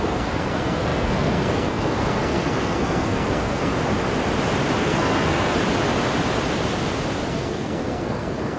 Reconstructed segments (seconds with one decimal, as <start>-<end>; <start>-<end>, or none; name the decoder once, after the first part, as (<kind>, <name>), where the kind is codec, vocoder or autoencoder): 0.0-3.7 (codec, SNAC); 4.8-5.6; 7.3-8.6